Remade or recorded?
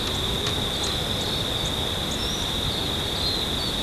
recorded